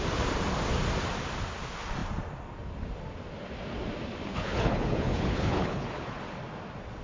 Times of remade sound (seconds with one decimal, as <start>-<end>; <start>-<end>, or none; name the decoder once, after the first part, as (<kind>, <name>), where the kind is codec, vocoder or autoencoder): 4.3-6.2 (codec, HILCodec)